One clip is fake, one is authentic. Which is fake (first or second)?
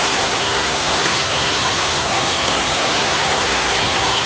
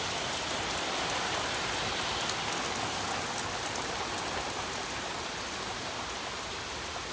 first